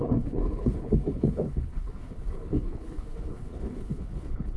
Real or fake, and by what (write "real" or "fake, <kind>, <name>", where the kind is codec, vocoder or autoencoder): fake, codec, HILCodec